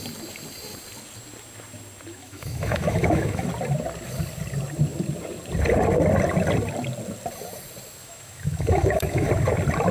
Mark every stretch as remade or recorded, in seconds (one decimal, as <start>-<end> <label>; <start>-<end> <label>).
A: 0.0-2.1 recorded; 2.1-3.5 remade; 3.5-8.0 recorded; 8.0-9.3 remade; 9.3-9.9 recorded